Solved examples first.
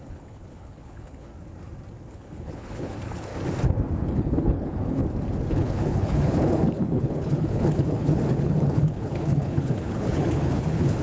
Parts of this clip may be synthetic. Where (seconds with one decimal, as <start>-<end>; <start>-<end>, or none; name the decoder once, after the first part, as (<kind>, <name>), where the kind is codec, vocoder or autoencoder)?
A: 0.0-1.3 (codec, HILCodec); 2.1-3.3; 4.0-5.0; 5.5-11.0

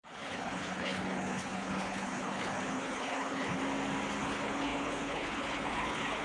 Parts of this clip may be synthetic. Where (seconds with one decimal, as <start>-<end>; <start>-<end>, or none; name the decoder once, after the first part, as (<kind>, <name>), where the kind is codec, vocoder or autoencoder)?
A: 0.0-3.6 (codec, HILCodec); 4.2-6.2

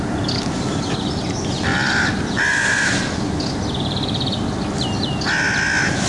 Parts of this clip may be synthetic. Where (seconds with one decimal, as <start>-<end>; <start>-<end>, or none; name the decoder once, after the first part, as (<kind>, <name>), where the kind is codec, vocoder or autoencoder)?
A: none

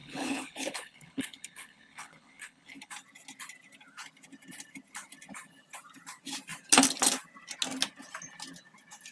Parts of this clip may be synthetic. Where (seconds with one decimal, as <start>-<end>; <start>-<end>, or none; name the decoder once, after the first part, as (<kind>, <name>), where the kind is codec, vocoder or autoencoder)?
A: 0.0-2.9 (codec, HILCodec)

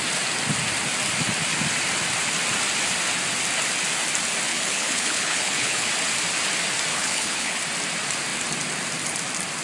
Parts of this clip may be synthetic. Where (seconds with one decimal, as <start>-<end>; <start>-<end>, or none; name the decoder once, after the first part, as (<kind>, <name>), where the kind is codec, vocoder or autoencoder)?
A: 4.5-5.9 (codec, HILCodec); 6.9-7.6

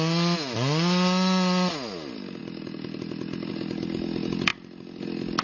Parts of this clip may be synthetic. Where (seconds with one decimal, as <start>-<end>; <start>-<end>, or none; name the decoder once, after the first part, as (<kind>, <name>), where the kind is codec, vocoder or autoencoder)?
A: none

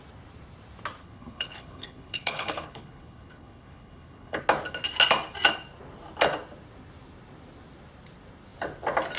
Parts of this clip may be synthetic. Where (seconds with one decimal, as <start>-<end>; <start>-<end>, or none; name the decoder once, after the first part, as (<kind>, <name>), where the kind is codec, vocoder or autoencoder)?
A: 1.0-4.4 (codec, HILCodec)